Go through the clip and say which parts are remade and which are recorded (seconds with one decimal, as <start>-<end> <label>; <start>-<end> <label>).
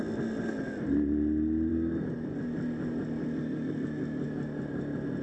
0.0-5.2 recorded